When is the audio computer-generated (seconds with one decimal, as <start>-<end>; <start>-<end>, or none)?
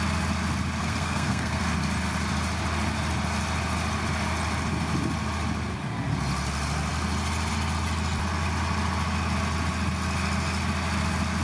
0.8-1.6